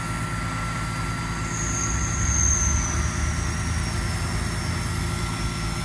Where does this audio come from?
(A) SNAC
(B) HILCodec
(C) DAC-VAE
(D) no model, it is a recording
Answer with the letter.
D